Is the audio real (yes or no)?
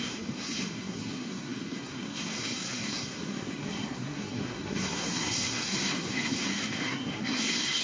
no